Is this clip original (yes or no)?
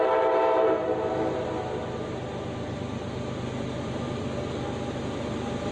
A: yes